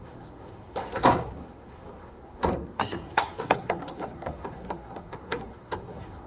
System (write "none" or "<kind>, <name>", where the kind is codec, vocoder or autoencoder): codec, SNAC